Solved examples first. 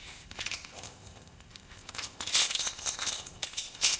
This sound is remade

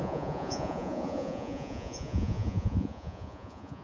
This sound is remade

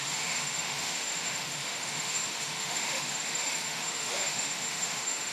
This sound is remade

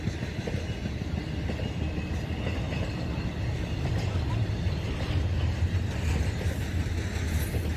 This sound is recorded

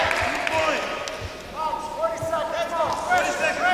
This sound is recorded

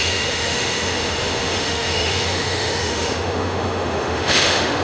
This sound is remade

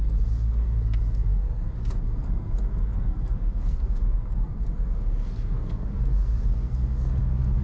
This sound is remade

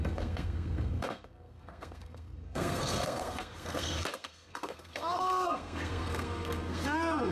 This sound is remade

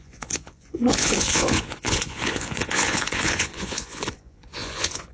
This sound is remade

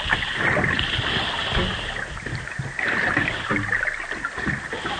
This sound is recorded